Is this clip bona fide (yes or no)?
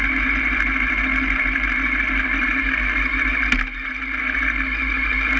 yes